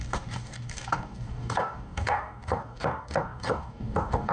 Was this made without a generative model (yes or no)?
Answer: no